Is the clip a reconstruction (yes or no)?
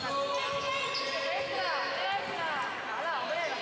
no